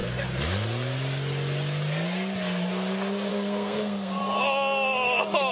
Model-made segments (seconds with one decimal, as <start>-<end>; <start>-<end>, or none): 3.3-4.2